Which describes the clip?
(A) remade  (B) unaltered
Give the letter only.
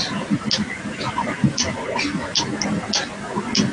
B